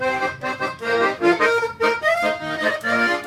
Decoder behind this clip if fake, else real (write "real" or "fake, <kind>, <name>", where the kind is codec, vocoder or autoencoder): fake, autoencoder, DAC-VAE